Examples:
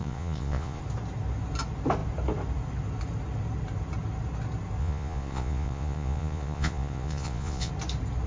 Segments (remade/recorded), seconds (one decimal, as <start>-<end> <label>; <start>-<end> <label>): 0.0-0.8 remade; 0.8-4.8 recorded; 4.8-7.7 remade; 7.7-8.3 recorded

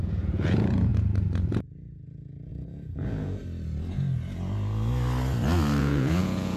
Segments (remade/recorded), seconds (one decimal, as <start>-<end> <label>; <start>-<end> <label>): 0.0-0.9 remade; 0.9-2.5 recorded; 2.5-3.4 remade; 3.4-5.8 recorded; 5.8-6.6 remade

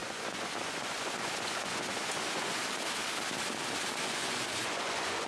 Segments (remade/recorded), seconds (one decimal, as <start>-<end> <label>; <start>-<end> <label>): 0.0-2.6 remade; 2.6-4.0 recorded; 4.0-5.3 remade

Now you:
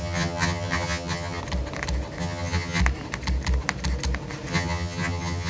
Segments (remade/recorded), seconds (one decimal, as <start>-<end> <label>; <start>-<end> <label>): 0.0-1.4 remade; 1.4-2.2 recorded; 2.2-2.8 remade; 2.8-4.5 recorded; 4.5-5.5 remade